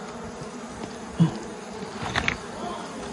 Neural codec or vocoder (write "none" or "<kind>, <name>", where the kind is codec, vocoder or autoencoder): none